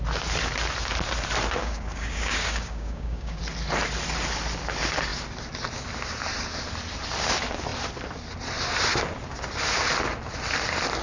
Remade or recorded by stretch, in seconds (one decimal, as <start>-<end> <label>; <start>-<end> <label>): 0.0-1.6 recorded; 1.6-3.4 remade; 3.4-11.0 recorded